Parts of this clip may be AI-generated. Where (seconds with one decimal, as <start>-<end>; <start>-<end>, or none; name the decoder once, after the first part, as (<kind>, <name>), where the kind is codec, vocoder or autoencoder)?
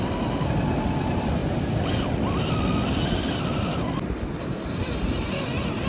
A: none